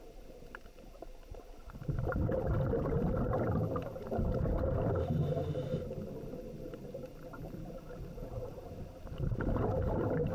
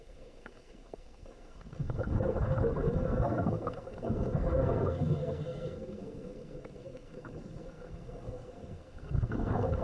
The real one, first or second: first